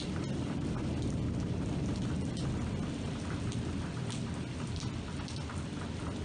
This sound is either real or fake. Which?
real